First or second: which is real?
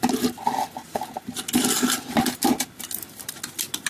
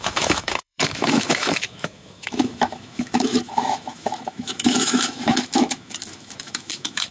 first